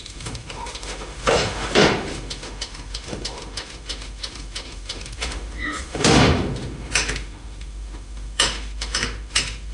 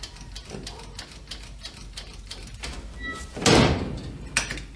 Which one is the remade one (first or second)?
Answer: first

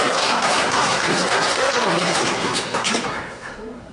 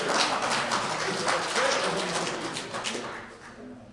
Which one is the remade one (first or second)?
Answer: first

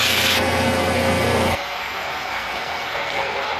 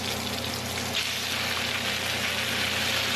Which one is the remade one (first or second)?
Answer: first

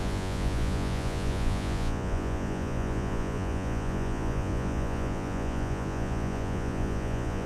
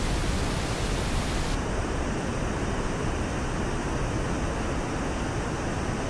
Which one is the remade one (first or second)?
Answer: first